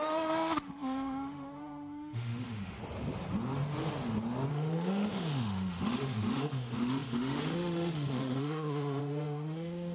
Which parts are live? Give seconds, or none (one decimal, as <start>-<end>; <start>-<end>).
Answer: 2.8-4.5